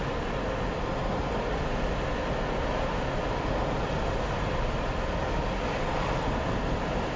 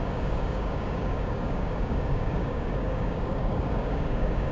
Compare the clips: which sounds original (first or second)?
first